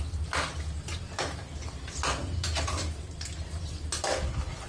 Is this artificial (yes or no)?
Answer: no